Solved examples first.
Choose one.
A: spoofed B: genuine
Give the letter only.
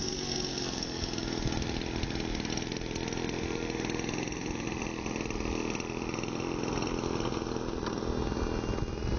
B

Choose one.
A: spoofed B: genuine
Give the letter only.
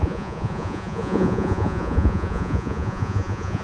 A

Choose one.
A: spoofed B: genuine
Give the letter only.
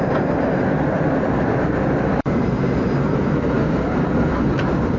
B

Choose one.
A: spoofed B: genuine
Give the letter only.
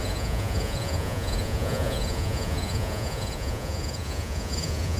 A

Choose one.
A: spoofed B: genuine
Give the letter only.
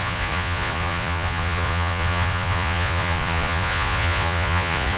A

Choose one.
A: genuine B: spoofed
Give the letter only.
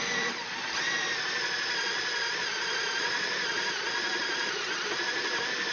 A